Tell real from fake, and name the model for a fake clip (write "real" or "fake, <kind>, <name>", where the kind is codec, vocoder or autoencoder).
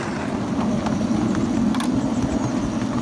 real